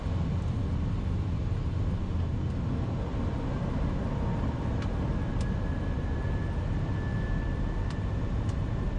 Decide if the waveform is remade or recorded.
recorded